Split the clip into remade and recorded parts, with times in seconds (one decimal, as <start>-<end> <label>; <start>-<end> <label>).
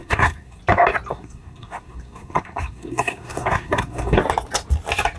0.0-0.6 remade; 0.6-1.1 recorded; 1.1-4.2 remade; 4.2-5.2 recorded